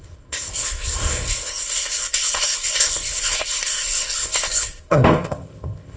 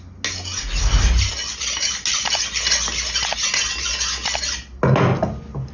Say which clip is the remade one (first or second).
first